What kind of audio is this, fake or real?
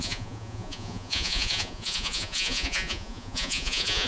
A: fake